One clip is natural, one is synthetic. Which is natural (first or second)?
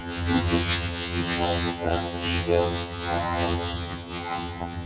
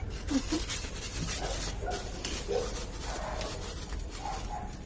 second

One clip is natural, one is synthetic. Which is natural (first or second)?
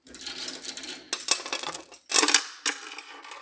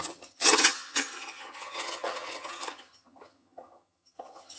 first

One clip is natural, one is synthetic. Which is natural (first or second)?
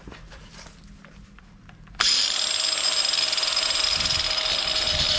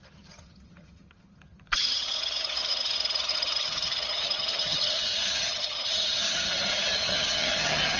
first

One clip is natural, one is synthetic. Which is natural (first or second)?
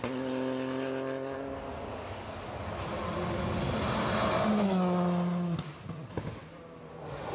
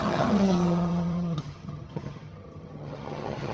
first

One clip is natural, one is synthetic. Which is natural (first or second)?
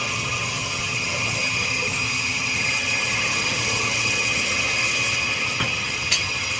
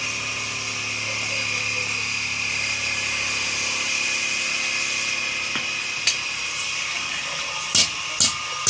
second